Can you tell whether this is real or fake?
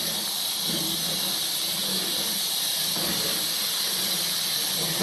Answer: real